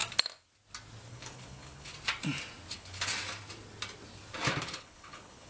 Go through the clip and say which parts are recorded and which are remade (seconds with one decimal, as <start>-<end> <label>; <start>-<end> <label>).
0.0-1.1 recorded; 1.1-1.9 remade; 1.9-2.7 recorded; 2.7-3.1 remade; 3.1-4.6 recorded; 4.6-5.5 remade